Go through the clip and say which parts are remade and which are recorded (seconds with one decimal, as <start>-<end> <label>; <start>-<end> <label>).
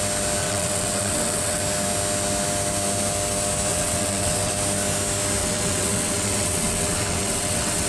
0.0-0.4 recorded; 0.4-1.6 remade; 1.6-3.7 recorded; 3.7-4.5 remade; 4.5-5.4 recorded; 5.4-7.9 remade